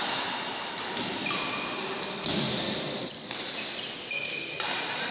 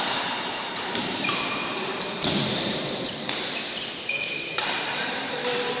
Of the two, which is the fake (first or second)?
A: second